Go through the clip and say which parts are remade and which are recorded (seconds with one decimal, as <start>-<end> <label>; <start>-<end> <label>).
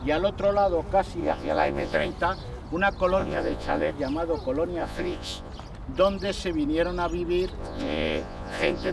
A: 0.0-1.2 recorded; 1.2-2.1 remade; 2.1-3.2 recorded; 3.2-3.9 remade; 3.9-4.8 recorded; 4.8-5.5 remade; 5.5-7.6 recorded; 7.6-8.9 remade